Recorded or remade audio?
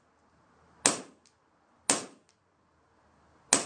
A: recorded